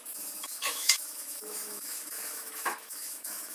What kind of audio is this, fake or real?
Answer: fake